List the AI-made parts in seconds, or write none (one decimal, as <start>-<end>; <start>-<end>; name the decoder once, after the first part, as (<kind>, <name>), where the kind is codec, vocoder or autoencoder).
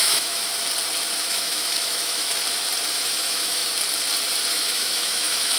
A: 0.0-0.5 (autoencoder, DAC-VAE); 1.2-2.3; 2.9-3.6; 4.5-5.6